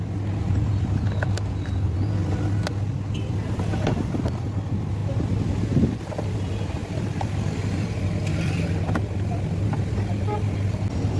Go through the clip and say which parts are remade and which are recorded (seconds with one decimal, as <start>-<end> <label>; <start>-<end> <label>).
0.0-6.8 recorded; 6.8-9.4 remade; 9.4-11.2 recorded